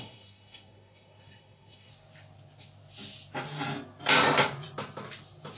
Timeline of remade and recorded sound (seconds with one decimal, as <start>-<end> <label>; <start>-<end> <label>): 0.0-1.9 remade; 1.9-5.6 recorded